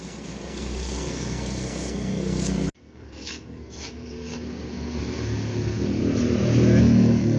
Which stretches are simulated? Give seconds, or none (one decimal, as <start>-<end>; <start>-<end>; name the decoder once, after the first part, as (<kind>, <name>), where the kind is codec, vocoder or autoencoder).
0.0-6.0 (codec, SNAC); 6.8-7.4